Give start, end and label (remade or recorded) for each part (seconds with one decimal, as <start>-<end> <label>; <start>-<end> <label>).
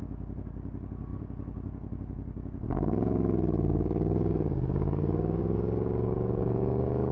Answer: 0.0-7.1 remade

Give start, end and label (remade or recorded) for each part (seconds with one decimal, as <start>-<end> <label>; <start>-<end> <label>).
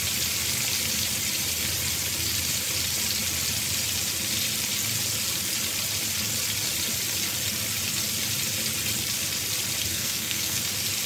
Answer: 0.0-9.9 recorded; 9.9-10.6 remade; 10.6-11.1 recorded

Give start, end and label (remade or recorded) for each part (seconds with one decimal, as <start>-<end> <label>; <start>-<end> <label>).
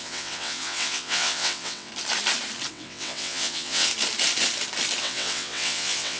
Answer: 0.0-1.9 remade; 1.9-2.7 recorded; 2.7-3.9 remade; 3.9-5.0 recorded; 5.0-6.2 remade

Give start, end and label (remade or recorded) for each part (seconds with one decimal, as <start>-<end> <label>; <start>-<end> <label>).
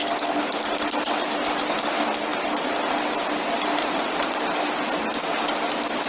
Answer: 0.0-3.8 recorded; 3.8-4.4 remade; 4.4-6.1 recorded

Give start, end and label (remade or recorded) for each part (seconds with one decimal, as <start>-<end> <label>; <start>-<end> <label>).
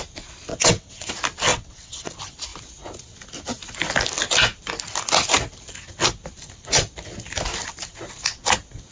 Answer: 0.0-0.5 recorded; 0.5-1.1 remade; 1.1-1.5 recorded; 1.5-2.1 remade; 2.1-8.9 recorded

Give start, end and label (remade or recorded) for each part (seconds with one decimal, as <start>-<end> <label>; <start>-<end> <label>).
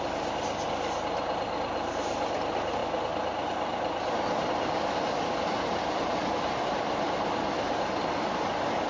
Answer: 0.0-8.9 recorded